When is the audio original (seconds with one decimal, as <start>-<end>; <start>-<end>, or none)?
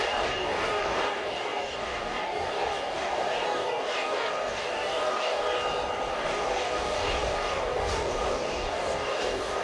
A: 5.6-6.1